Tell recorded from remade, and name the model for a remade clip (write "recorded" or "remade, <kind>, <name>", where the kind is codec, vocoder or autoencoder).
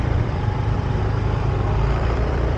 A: remade, vocoder, BigVGAN v2